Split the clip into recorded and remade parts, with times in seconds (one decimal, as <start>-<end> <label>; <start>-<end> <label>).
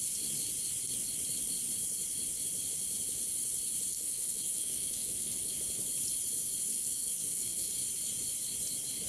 0.0-3.9 recorded; 3.9-5.5 remade; 5.5-6.7 recorded; 6.7-7.7 remade; 7.7-9.1 recorded